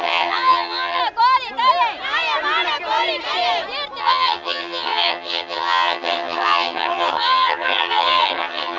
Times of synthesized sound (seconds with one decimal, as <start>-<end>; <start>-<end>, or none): 0.0-1.0; 4.0-8.8